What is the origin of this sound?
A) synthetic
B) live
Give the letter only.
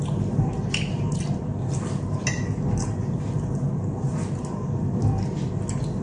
B